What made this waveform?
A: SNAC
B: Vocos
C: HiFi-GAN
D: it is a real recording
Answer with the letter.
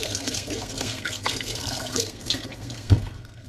A